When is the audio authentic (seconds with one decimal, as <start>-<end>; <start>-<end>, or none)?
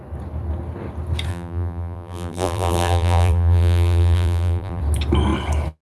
0.0-1.3; 4.8-5.9